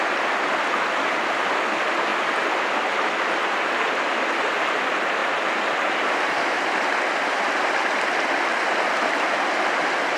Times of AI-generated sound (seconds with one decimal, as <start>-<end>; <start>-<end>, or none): 5.2-6.6

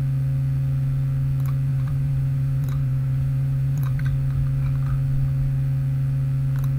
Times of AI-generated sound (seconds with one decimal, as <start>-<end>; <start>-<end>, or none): 1.7-4.0

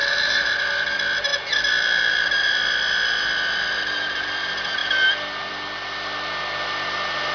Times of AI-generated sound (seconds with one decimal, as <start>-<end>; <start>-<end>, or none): 0.0-0.6